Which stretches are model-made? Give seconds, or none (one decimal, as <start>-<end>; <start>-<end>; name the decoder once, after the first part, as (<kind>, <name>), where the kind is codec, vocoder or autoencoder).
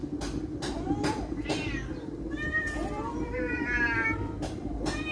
0.7-5.1 (vocoder, BigVGAN v2)